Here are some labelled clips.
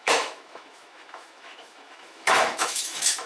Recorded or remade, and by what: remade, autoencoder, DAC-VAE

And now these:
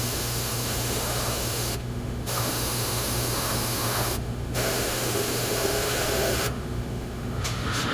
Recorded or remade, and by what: remade, autoencoder, DAC-VAE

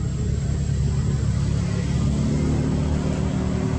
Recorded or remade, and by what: recorded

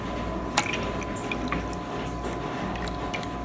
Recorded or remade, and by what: recorded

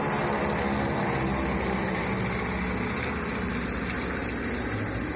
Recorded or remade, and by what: recorded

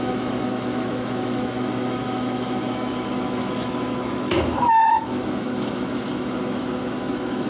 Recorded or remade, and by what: remade, autoencoder, DAC-VAE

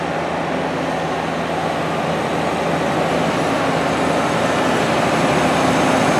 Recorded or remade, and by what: recorded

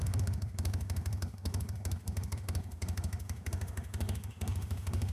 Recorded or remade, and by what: remade, autoencoder, DAC-VAE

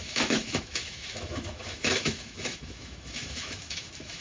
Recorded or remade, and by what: remade, autoencoder, DAC-VAE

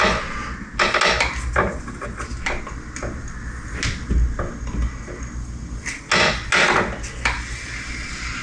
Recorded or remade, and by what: recorded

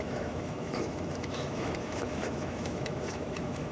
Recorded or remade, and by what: remade, autoencoder, DAC-VAE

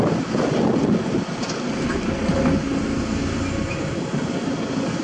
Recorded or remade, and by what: recorded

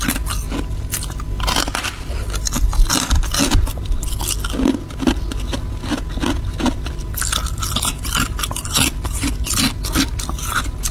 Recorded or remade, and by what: recorded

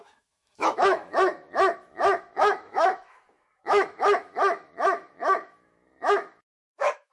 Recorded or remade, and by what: remade, autoencoder, DAC-VAE